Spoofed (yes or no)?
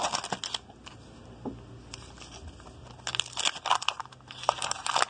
no